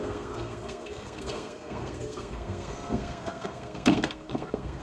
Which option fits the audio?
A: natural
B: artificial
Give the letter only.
B